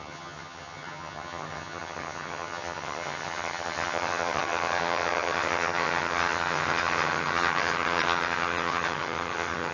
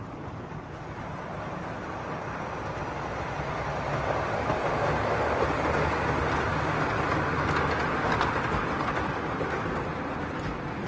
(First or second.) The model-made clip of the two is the first